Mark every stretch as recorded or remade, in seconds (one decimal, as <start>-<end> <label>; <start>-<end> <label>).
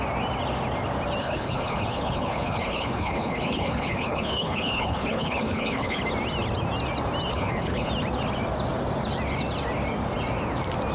0.0-1.2 recorded; 1.2-6.0 remade; 6.0-7.3 recorded; 7.3-7.9 remade; 7.9-10.9 recorded